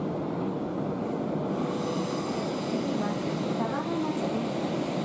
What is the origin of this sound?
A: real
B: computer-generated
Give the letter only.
A